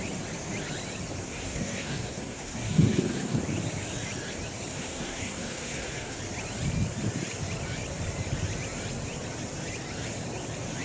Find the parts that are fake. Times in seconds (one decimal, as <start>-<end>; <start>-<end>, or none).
1.2-3.4; 4.7-6.2

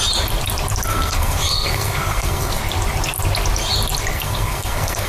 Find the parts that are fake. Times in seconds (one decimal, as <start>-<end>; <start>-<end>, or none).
0.9-2.6; 4.1-5.1

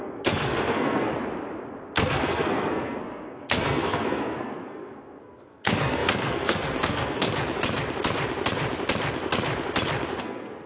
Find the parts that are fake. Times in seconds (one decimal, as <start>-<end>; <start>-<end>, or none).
0.0-1.1; 2.0-7.3; 10.2-10.7